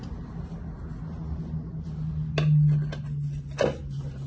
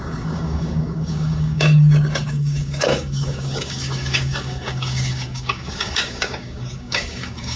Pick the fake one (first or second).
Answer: second